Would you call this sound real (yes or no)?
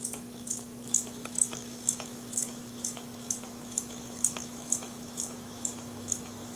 no